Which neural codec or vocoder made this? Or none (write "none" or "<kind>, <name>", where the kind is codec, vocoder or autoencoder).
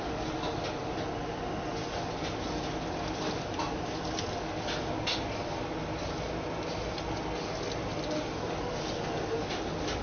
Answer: none